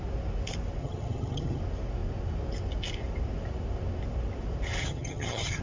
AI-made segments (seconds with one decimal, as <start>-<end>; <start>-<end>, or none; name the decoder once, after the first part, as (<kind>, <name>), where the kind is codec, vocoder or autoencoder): 0.8-1.6 (vocoder, HiFi-GAN); 4.8-5.6